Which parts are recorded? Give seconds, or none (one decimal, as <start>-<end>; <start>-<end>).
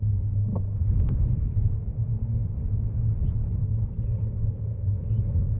0.0-5.6